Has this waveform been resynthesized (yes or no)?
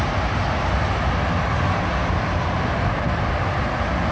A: no